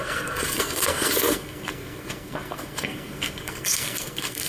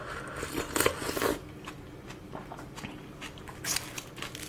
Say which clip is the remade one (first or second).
first